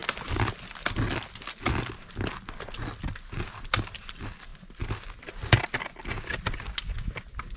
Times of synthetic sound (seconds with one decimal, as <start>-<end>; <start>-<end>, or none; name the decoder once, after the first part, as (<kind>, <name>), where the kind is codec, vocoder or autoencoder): none